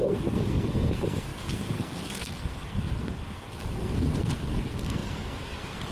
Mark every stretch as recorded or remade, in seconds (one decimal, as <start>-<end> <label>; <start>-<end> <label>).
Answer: 0.0-5.9 remade